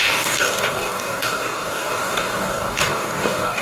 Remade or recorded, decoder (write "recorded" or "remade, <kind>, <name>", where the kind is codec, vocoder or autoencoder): remade, codec, DAC